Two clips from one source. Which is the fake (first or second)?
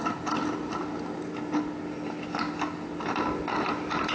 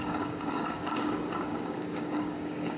second